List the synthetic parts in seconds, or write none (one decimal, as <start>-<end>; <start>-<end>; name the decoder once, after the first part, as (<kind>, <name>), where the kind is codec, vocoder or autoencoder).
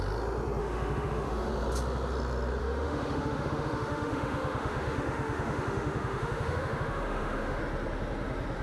0.6-1.5 (autoencoder, DAC-VAE); 2.6-7.6